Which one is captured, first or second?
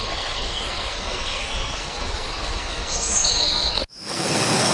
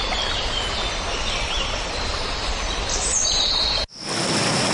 second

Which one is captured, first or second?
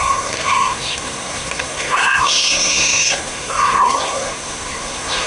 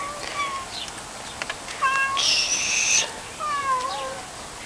second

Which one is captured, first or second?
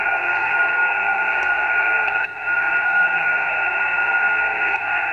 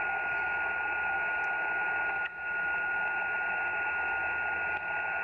second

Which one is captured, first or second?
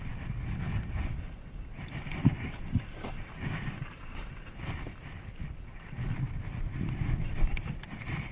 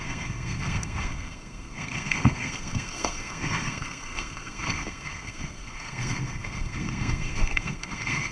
first